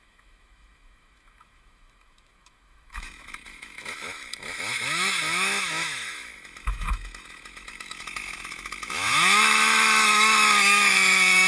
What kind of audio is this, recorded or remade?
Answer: remade